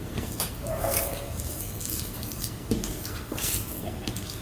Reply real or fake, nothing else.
fake